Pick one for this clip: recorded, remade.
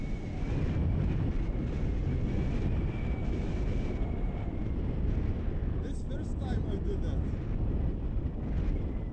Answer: recorded